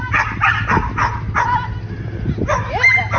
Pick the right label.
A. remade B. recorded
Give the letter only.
B